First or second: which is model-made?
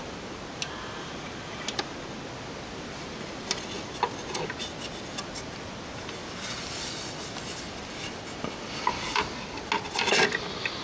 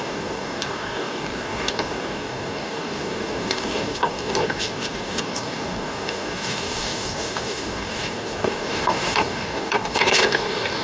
second